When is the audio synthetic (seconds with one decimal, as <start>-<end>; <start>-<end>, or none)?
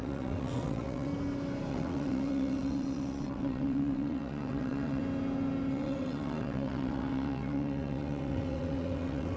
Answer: 0.0-1.1; 1.7-5.0; 5.7-9.4